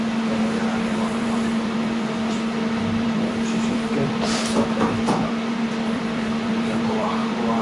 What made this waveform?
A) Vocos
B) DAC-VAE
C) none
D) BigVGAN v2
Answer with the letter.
D